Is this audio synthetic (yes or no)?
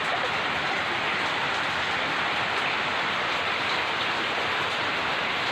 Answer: no